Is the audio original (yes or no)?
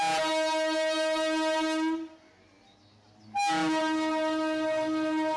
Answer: yes